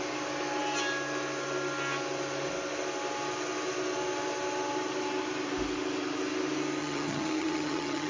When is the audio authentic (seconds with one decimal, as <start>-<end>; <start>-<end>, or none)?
0.0-6.8

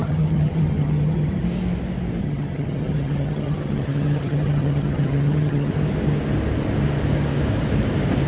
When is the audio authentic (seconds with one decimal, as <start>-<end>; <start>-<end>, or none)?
1.4-2.2; 5.7-8.3